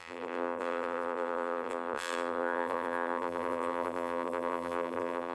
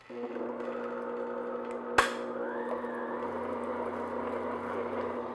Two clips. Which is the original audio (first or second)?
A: second